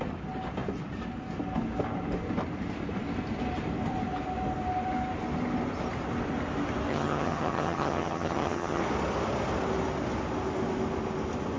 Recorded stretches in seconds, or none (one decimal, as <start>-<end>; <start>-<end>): 0.0-6.9; 8.8-11.6